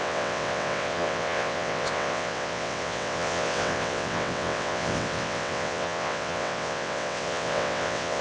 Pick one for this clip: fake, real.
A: fake